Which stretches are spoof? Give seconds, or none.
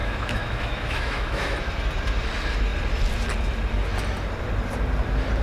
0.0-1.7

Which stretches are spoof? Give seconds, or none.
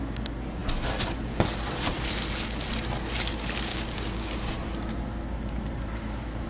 3.7-4.3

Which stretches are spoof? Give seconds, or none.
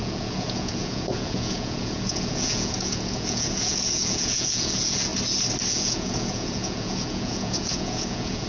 0.0-5.1; 5.7-8.5